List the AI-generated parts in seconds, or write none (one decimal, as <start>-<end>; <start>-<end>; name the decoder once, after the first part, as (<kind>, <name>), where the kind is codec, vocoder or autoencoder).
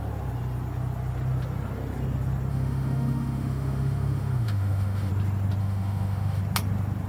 2.5-5.1 (autoencoder, DAC-VAE); 5.6-6.4